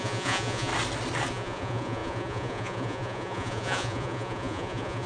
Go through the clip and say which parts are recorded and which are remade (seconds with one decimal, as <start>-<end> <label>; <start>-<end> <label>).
0.0-0.7 remade; 0.7-1.3 recorded; 1.3-5.1 remade